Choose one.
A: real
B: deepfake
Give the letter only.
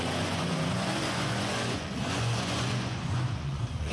B